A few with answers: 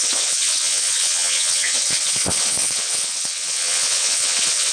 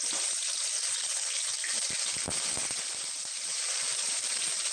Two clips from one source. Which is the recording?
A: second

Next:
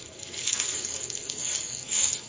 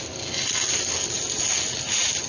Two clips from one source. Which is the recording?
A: second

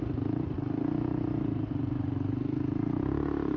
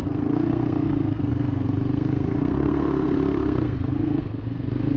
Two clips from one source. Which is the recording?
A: first